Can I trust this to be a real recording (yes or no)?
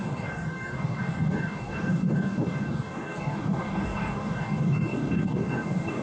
no